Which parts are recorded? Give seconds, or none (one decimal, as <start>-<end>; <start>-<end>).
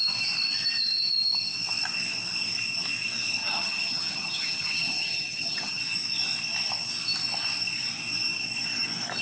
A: 0.0-3.4; 5.8-9.2